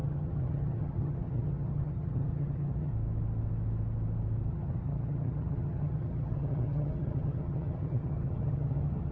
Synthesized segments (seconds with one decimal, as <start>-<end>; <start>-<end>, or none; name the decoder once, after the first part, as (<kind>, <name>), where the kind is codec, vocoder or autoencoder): 0.0-2.9 (vocoder, HiFi-GAN); 4.5-9.1